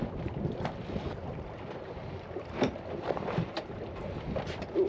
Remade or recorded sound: remade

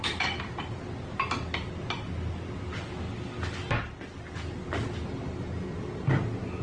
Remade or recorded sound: recorded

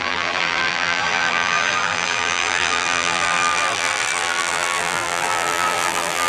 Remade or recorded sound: remade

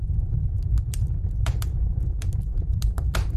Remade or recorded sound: remade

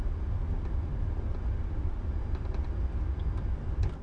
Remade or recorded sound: recorded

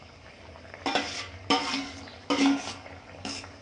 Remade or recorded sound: remade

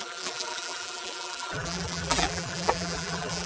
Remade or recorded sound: remade